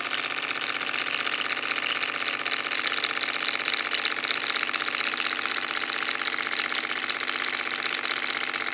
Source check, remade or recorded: recorded